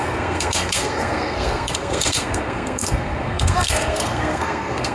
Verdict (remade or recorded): remade